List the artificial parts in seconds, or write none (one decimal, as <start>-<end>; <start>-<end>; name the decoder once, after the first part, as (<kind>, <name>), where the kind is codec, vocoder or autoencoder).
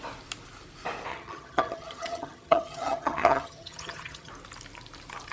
1.1-4.3 (vocoder, HiFi-GAN)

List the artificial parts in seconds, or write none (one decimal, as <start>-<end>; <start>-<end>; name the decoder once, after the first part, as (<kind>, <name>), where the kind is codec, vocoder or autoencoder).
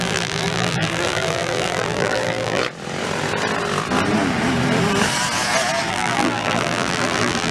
0.0-2.6 (vocoder, BigVGAN v2); 5.9-7.5